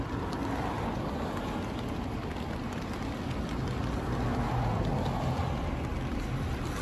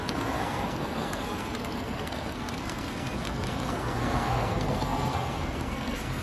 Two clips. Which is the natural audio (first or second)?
first